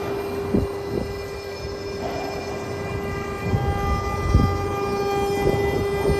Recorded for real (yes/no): yes